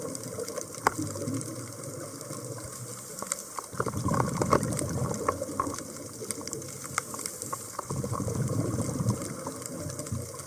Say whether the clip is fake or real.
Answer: fake